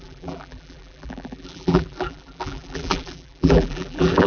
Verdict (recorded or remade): remade